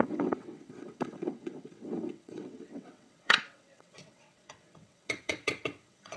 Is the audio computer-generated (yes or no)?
yes